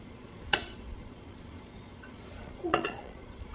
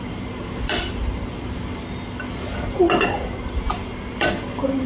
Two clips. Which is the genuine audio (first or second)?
second